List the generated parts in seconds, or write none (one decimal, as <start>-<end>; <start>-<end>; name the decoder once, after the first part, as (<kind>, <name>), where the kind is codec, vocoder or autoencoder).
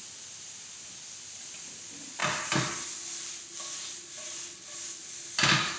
none